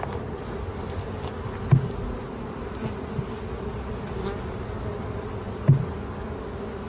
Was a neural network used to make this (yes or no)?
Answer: no